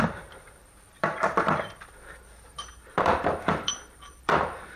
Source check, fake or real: fake